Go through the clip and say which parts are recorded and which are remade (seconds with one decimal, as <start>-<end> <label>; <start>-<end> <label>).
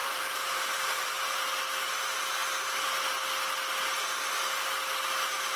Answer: 0.0-1.3 remade; 1.3-5.6 recorded